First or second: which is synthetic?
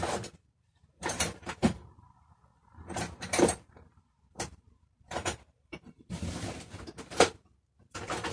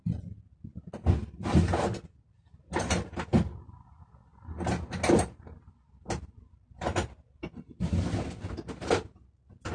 first